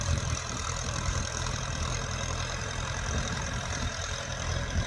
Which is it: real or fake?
fake